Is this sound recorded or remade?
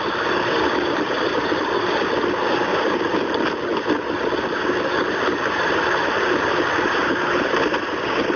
remade